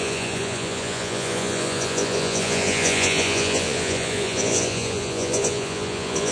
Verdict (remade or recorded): remade